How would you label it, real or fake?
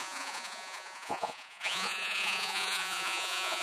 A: fake